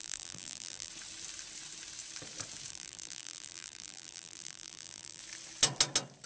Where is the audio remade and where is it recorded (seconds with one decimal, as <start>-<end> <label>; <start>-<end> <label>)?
0.0-0.9 remade; 0.9-2.7 recorded; 2.7-5.2 remade; 5.2-6.3 recorded